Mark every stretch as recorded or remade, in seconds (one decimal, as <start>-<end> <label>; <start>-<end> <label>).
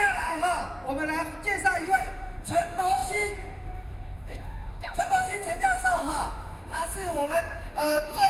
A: 0.0-0.6 remade; 0.6-1.8 recorded; 1.8-8.3 remade